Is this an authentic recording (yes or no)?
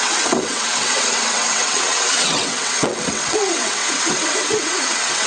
no